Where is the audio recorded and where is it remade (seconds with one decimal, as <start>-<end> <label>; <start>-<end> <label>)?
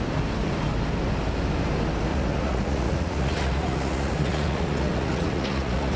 0.0-2.1 recorded; 2.1-6.0 remade